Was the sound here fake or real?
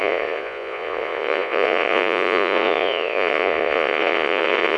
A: fake